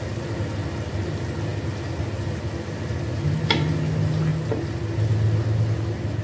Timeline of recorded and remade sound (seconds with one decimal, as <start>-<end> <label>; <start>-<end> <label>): 0.0-3.1 recorded; 3.1-3.7 remade; 3.7-6.2 recorded